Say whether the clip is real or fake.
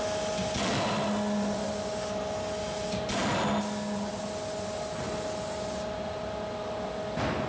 real